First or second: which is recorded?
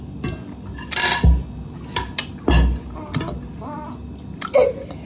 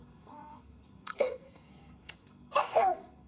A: first